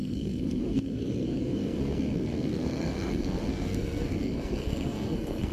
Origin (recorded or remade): remade